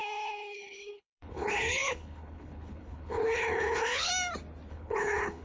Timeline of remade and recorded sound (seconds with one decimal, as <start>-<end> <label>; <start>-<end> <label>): 0.0-4.1 remade; 4.1-4.7 recorded; 4.7-5.4 remade